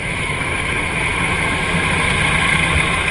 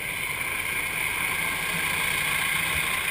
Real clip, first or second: second